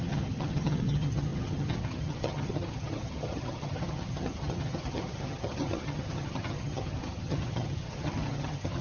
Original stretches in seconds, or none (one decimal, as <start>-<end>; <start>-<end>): none